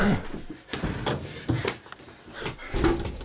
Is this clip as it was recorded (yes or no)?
yes